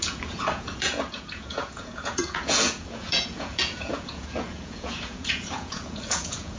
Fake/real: fake